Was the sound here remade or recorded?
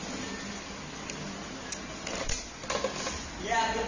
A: recorded